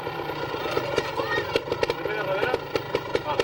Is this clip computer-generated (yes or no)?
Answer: no